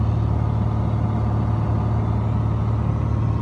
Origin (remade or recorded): recorded